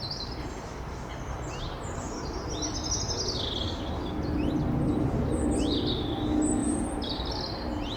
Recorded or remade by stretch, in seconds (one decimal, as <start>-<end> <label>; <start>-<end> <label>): 0.0-6.6 recorded; 6.6-7.1 remade; 7.1-8.0 recorded